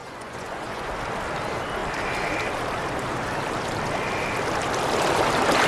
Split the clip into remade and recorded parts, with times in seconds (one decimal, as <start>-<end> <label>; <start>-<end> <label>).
0.0-0.9 remade; 0.9-5.7 recorded

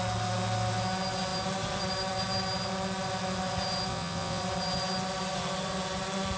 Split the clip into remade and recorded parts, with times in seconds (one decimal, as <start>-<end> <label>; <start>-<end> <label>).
0.0-3.9 recorded; 3.9-4.4 remade; 4.4-6.4 recorded

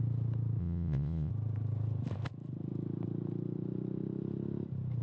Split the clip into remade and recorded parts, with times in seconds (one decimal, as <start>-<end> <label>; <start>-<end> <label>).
0.0-0.6 recorded; 0.6-1.3 remade; 1.3-5.0 recorded

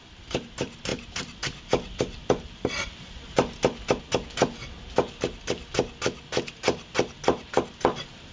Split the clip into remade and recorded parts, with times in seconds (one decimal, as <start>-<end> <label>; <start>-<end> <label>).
0.0-8.3 recorded

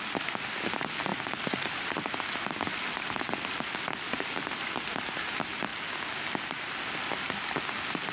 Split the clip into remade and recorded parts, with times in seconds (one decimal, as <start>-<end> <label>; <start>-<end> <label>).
0.0-8.1 recorded

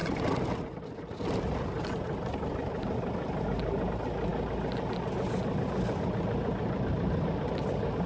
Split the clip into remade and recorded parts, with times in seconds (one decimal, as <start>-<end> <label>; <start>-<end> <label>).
0.0-8.1 recorded